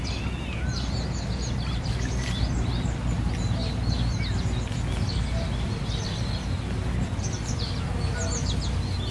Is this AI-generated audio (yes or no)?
no